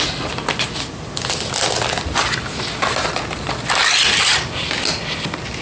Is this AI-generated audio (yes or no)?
no